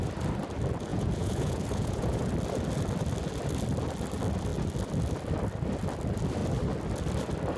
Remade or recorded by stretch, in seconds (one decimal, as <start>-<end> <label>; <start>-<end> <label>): 0.0-0.9 recorded; 0.9-2.3 remade; 2.3-7.6 recorded